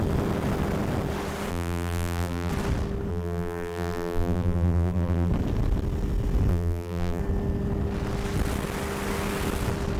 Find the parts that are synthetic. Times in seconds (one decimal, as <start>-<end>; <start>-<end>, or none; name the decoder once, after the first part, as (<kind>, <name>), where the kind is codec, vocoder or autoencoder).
1.5-2.5 (vocoder, BigVGAN v2); 3.1-5.3; 6.5-7.2